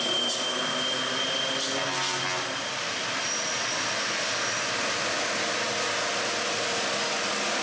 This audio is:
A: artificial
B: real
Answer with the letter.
B